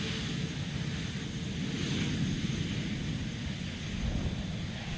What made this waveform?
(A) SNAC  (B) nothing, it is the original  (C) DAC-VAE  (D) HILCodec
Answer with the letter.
B